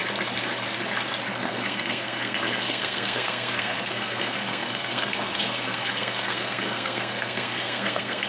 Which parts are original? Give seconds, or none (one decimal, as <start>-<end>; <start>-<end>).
0.0-1.4